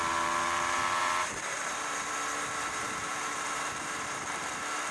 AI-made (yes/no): yes